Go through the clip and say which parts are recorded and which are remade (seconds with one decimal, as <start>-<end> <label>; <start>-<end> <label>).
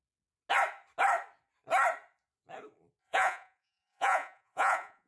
0.0-3.0 recorded; 3.0-5.1 remade